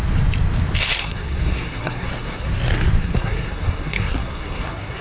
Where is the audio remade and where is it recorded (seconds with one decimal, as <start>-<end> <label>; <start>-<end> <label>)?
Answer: 0.0-0.9 recorded; 0.9-2.5 remade; 2.5-3.0 recorded; 3.0-5.0 remade